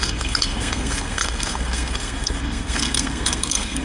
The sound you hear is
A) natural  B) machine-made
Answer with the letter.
B